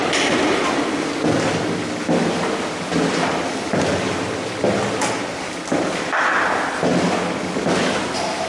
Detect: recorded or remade recorded